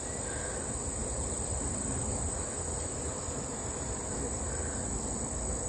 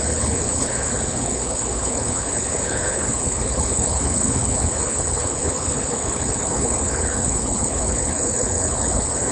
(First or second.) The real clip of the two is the first